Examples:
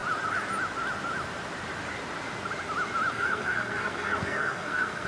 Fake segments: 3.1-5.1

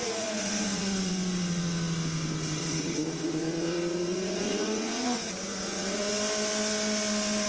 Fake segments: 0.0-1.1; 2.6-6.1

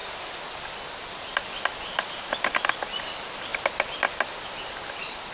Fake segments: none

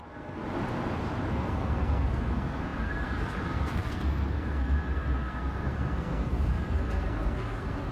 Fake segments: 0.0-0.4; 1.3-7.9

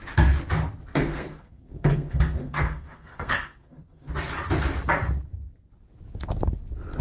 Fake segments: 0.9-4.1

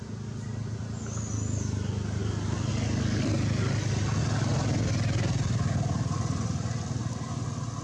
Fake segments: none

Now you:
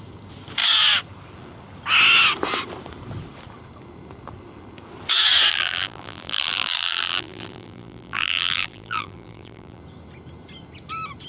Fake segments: 5.5-9.8